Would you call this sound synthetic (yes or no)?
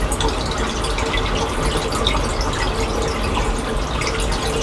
no